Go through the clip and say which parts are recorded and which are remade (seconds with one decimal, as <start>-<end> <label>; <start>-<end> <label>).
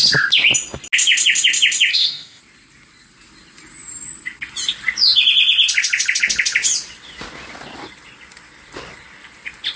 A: 0.0-1.9 recorded; 1.9-2.4 remade; 2.4-9.8 recorded